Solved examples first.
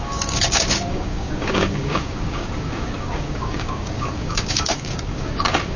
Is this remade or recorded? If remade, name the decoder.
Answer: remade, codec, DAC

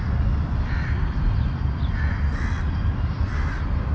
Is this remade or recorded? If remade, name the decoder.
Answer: recorded